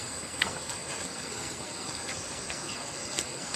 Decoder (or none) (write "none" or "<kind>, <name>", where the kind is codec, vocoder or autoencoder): codec, SNAC